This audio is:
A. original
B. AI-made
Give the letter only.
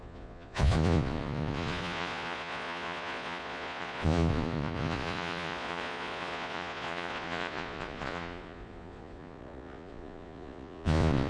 B